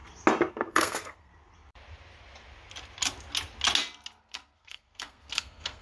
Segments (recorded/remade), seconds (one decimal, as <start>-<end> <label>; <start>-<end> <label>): 0.0-0.5 recorded; 0.5-1.3 remade; 1.3-4.2 recorded; 4.2-5.8 remade